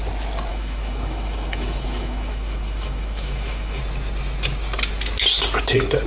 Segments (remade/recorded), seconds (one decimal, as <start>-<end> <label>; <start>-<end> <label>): 0.0-0.5 recorded; 0.5-3.8 remade; 3.8-6.1 recorded